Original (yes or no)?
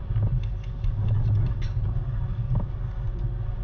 yes